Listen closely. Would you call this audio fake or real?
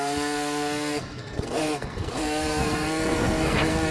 fake